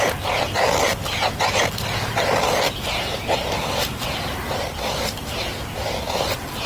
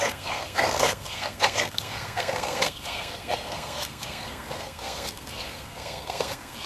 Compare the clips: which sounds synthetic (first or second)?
second